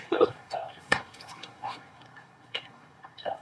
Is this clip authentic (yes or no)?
no